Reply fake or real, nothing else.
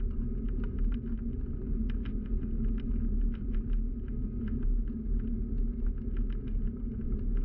real